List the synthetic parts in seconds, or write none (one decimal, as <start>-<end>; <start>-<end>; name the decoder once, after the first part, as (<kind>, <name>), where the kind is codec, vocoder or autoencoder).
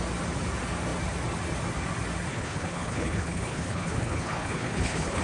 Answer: 2.3-5.2 (codec, HILCodec)